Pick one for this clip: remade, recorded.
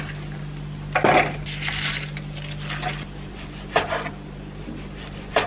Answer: recorded